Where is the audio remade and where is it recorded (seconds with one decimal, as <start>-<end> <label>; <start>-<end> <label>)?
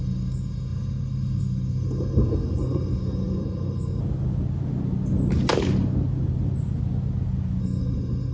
0.0-4.0 remade; 4.0-7.6 recorded; 7.6-8.3 remade